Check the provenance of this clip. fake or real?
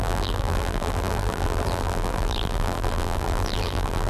fake